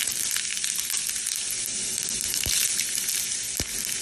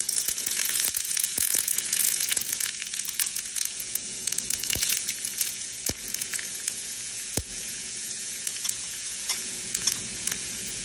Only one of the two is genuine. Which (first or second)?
first